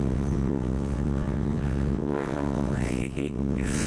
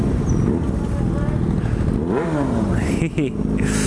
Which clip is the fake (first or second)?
first